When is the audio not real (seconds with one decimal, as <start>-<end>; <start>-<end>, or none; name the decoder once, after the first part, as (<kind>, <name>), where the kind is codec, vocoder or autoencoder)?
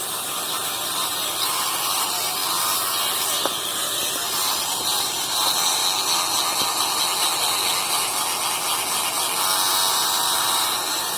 0.0-2.4 (vocoder, BigVGAN v2); 3.0-5.8; 9.9-11.2